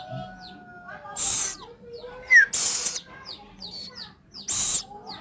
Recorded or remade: recorded